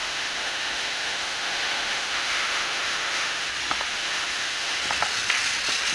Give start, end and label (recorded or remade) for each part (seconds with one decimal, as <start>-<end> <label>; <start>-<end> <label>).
0.0-3.5 remade; 3.5-3.9 recorded; 3.9-4.8 remade; 4.8-5.9 recorded